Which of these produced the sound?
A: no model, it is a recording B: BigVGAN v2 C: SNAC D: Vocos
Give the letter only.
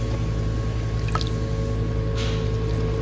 A